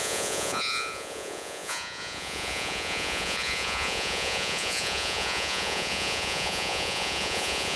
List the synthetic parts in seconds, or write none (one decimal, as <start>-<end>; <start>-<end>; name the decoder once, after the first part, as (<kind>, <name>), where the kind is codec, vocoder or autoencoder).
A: 0.0-7.8 (vocoder, Vocos)